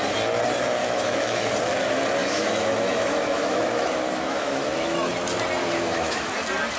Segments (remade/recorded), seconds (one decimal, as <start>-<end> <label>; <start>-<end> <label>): 0.0-0.8 recorded; 0.8-1.5 remade; 1.5-2.2 recorded; 2.2-5.1 remade; 5.1-5.6 recorded; 5.6-6.3 remade; 6.3-6.8 recorded